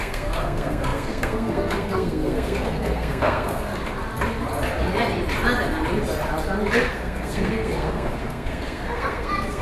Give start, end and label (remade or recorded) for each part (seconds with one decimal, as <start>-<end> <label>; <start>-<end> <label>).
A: 0.0-3.7 remade; 3.7-6.9 recorded; 6.9-9.6 remade